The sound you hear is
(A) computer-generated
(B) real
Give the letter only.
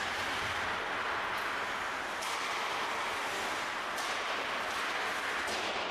B